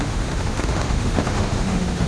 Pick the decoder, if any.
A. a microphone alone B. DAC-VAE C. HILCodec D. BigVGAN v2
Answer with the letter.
B